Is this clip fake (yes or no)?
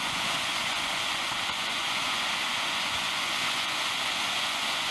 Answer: yes